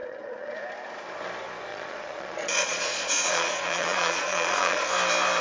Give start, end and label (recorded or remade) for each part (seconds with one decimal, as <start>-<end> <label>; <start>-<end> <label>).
0.0-0.6 remade; 0.6-1.7 recorded; 1.7-4.8 remade; 4.8-5.4 recorded